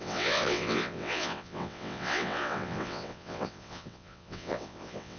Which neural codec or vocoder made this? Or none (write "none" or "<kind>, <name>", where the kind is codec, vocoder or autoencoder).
vocoder, WaveNeXt